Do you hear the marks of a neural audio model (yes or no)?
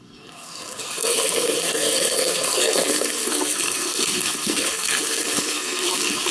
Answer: yes